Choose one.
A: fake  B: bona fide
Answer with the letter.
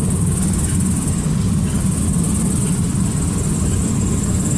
B